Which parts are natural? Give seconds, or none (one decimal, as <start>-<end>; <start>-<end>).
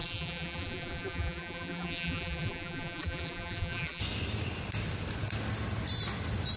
4.0-6.6